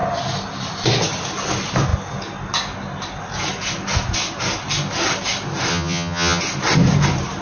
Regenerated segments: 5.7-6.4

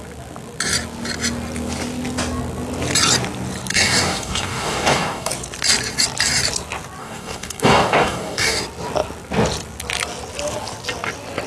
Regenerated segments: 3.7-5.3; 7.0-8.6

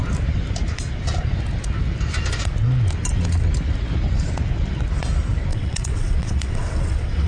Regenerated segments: 5.5-7.3